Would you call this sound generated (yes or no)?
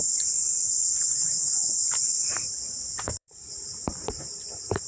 yes